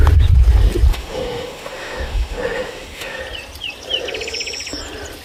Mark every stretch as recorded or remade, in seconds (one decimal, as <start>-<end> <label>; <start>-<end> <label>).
0.0-0.9 recorded; 0.9-3.2 remade; 3.2-5.2 recorded